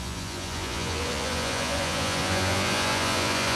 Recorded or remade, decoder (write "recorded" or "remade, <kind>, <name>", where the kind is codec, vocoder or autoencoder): remade, vocoder, Vocos